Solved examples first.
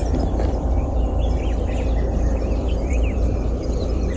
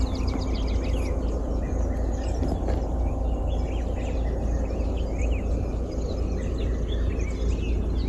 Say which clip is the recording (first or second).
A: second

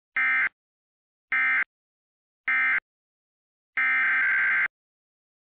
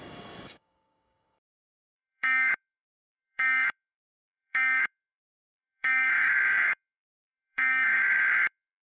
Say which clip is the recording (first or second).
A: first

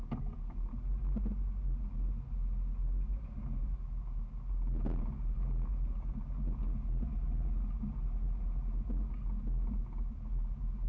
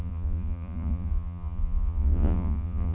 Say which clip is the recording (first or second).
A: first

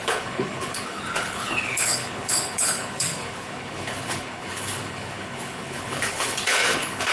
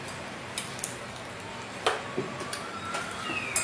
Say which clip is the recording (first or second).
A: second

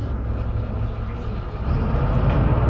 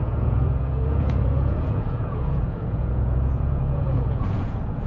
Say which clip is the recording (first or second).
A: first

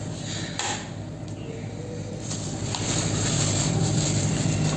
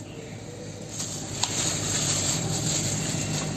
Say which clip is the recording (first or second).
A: first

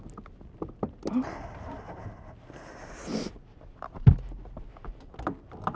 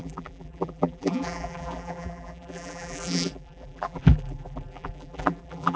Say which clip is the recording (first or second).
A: first